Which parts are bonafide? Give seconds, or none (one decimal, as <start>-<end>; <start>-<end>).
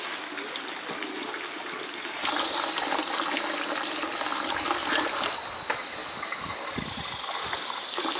0.0-8.2